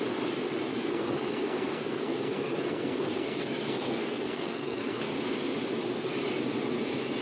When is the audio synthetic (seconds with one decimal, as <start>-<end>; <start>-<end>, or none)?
0.7-5.0

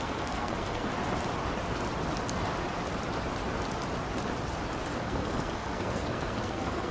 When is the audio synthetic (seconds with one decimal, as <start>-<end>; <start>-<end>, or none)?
0.0-0.9; 5.0-6.9

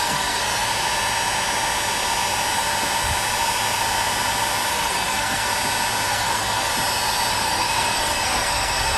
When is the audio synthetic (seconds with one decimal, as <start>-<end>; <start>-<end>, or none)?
0.0-0.5; 4.7-5.5; 6.1-6.7; 7.3-9.0

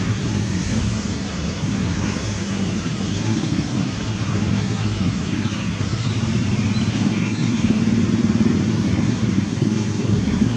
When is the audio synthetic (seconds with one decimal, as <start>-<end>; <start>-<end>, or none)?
0.0-6.1; 6.9-7.8; 8.7-10.6